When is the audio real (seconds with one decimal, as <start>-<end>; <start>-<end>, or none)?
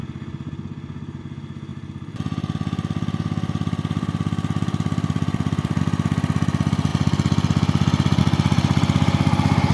0.0-1.7; 5.8-9.7